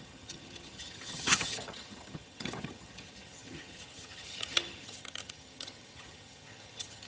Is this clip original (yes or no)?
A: no